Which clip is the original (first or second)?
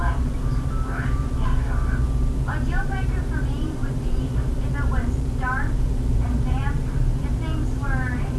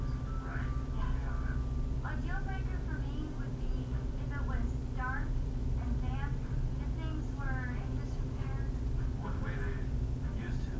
second